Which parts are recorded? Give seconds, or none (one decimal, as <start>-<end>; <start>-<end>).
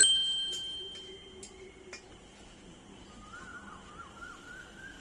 0.0-5.0